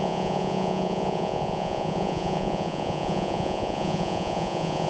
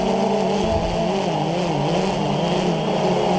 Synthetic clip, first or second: first